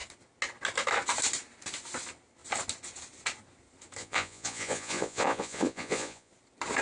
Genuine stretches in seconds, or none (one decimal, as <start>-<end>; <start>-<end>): 0.0-4.0; 6.3-6.8